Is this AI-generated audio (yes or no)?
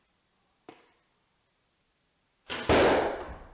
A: no